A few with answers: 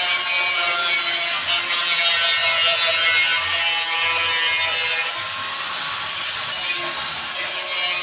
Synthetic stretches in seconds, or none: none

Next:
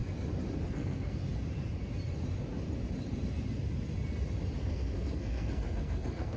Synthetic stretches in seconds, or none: 0.7-1.2 (codec, SNAC); 4.6-6.4

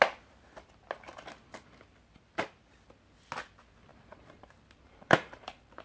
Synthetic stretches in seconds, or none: 3.9-5.8 (vocoder, BigVGAN v2)

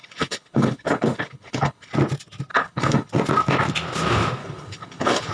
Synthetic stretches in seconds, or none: 0.0-1.9 (codec, HILCodec); 2.5-3.1; 4.4-5.3

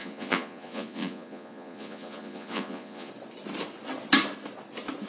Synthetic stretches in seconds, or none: 0.0-3.1 (vocoder, Vocos)

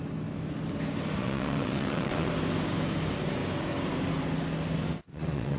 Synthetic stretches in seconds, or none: 1.2-2.3 (vocoder, WaveNeXt); 5.1-5.6

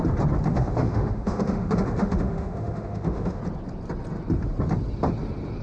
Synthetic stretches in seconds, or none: 0.5-3.4 (autoencoder, DAC-VAE)